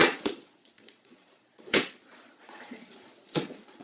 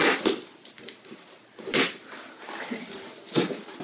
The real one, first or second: second